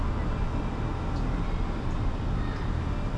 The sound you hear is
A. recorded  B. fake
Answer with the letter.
A